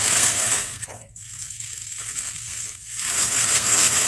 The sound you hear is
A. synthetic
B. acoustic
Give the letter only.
A